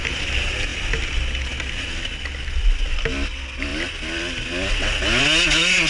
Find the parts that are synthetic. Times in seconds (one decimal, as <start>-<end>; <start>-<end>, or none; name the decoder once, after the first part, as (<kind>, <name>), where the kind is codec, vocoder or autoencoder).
none